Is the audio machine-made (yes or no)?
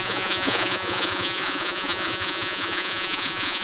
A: yes